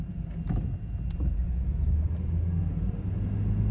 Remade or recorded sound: recorded